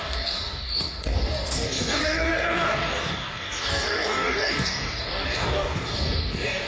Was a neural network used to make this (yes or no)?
yes